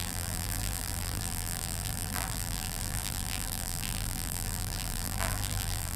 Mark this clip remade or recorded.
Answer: remade